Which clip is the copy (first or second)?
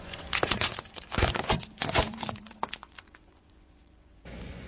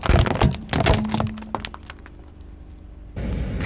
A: first